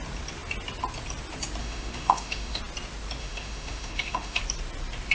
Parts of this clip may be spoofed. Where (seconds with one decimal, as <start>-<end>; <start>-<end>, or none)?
1.6-2.6; 3.2-4.4